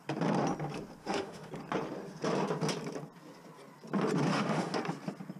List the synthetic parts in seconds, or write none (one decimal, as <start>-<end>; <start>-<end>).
1.0-1.5; 4.3-4.8